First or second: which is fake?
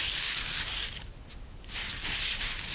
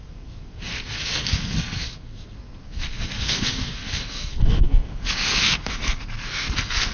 second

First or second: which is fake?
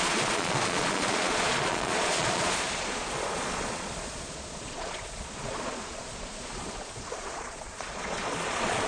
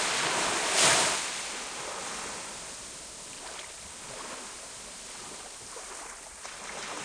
first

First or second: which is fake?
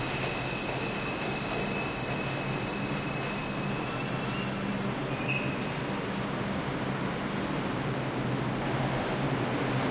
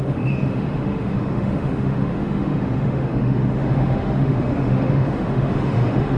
second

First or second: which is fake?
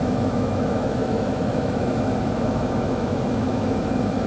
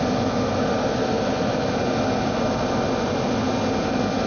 first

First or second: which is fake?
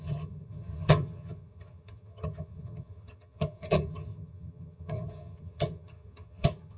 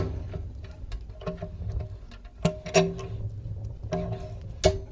first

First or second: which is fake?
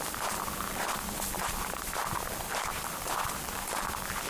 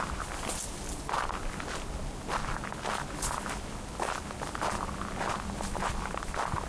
first